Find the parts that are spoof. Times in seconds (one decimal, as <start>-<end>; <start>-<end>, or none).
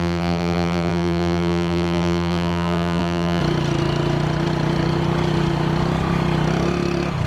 0.0-3.4